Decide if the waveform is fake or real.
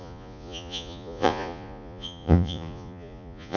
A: fake